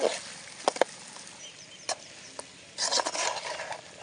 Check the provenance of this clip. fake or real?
real